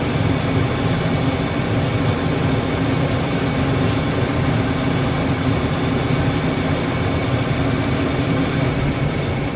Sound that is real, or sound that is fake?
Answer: real